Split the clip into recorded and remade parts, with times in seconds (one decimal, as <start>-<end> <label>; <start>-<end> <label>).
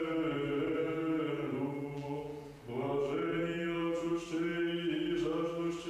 0.0-0.8 recorded; 0.8-2.6 remade; 2.6-3.0 recorded; 3.0-4.1 remade; 4.1-5.9 recorded